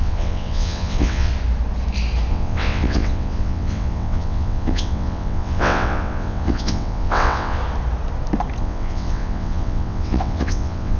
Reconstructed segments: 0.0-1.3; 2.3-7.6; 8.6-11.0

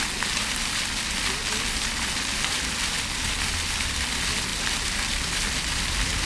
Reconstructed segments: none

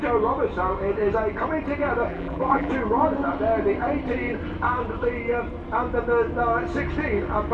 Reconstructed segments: 2.1-2.7

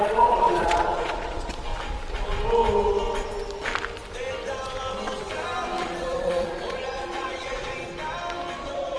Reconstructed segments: 0.0-1.5; 5.8-7.9; 8.6-9.0